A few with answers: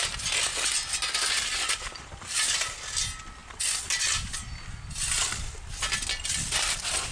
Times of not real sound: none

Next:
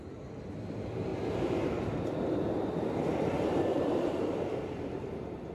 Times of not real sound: 1.1-2.1 (vocoder, BigVGAN v2); 3.7-5.5

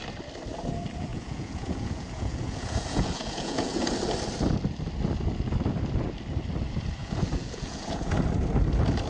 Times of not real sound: 1.1-3.9 (vocoder, Vocos); 7.0-8.1

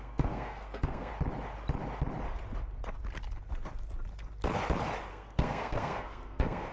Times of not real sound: 0.0-1.1 (codec, SNAC); 5.1-6.7

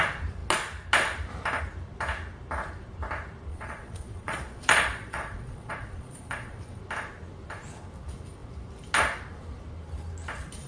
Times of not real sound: 3.5-6.8 (vocoder, Vocos)

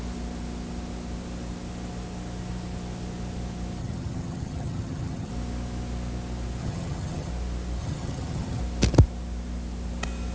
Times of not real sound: 3.8-5.3 (vocoder, HiFi-GAN); 6.6-7.3; 7.8-8.6

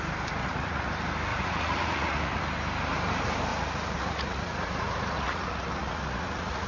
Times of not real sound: 0.4-0.9 (vocoder, Vocos); 1.3-2.4; 3.5-6.7